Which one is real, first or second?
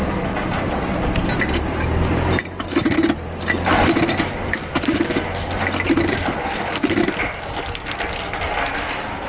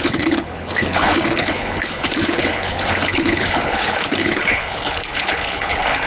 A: first